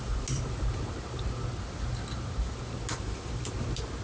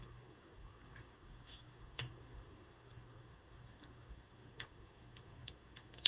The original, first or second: first